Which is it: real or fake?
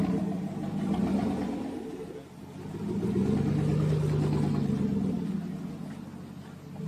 real